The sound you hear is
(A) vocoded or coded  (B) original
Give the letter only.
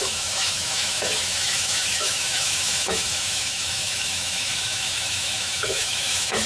A